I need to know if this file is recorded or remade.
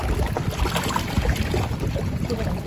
recorded